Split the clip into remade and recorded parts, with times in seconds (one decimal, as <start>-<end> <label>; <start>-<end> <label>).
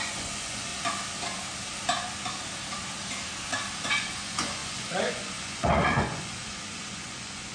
0.0-0.7 remade; 0.7-3.8 recorded; 3.8-7.5 remade